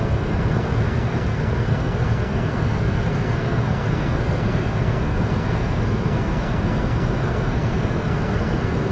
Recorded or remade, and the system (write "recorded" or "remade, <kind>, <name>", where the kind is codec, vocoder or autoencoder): remade, codec, SNAC